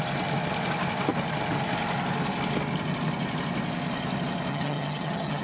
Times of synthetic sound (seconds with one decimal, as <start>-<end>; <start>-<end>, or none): 4.5-5.4